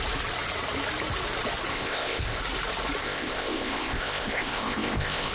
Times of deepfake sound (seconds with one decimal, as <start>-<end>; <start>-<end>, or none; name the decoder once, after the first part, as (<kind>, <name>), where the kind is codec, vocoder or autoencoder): 1.7-2.4 (codec, ZipCodec); 3.0-5.3